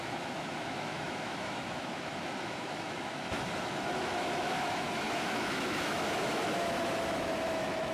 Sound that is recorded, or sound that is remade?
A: remade